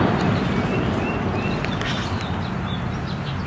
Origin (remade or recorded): recorded